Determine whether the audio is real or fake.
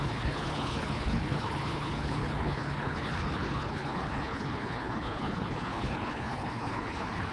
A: fake